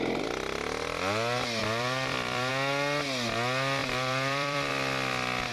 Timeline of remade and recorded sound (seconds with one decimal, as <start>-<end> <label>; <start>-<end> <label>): 0.0-1.6 recorded; 1.6-2.5 remade; 2.5-3.8 recorded; 3.8-4.7 remade; 4.7-5.5 recorded